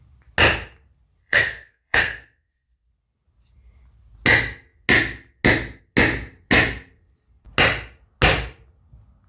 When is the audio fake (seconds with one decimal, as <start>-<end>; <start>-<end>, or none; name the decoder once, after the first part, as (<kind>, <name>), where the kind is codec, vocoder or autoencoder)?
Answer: 1.2-2.9 (codec, SNAC)